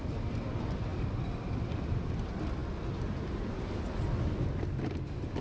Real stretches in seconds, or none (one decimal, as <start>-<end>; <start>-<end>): 0.0-5.4